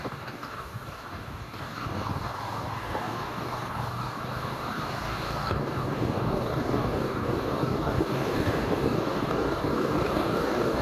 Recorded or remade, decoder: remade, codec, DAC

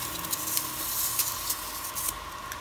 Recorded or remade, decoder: recorded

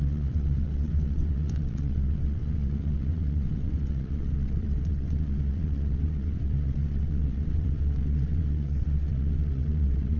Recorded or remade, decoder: remade, vocoder, WaveNeXt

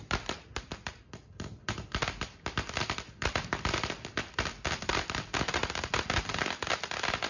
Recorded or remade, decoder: recorded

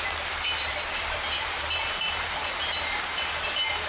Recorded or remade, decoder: remade, vocoder, BigVGAN v2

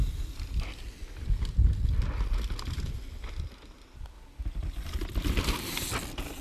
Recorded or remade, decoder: recorded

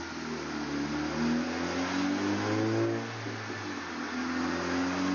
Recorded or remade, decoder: recorded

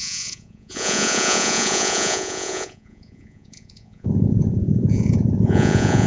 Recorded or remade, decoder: remade, vocoder, Vocos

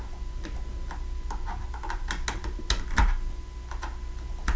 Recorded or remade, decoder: recorded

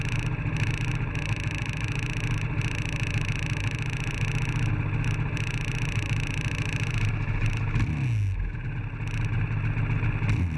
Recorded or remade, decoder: recorded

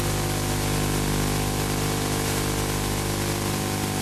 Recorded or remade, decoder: recorded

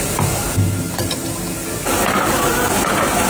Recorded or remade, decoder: recorded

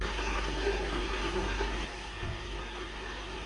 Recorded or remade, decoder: remade, codec, SNAC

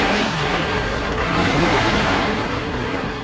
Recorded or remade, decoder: remade, codec, SNAC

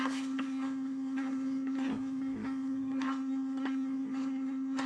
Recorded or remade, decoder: remade, codec, SNAC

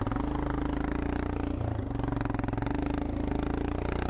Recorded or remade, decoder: recorded